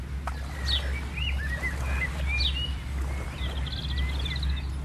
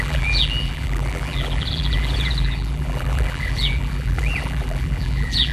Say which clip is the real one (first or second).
first